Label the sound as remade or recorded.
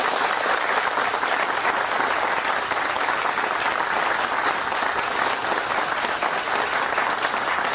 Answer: recorded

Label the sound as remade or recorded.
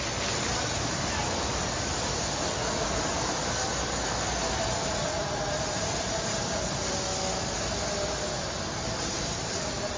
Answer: recorded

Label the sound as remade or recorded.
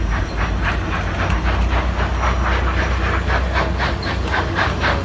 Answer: recorded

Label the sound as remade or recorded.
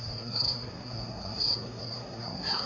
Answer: remade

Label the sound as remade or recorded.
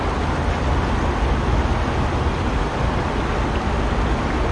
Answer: recorded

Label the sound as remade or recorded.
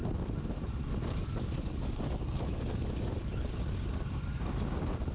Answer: recorded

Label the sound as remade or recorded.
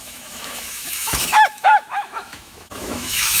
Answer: remade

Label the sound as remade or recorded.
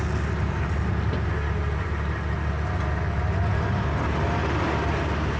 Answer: recorded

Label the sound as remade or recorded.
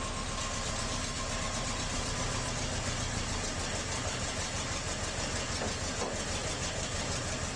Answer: recorded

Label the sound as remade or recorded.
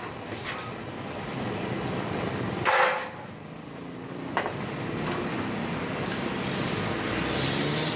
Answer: recorded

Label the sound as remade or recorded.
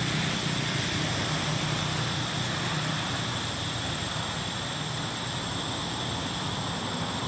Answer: recorded